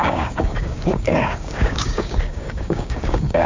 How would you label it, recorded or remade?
remade